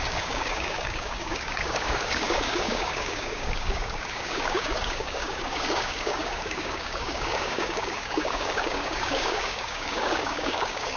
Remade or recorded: remade